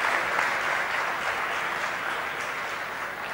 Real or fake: real